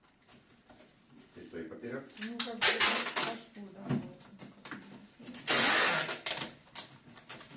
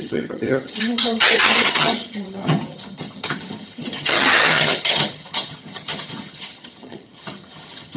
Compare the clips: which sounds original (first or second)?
first